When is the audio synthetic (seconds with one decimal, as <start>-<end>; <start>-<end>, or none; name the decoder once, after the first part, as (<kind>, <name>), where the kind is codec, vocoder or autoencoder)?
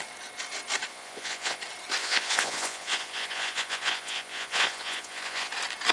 0.9-1.6 (vocoder, Vocos); 2.0-5.5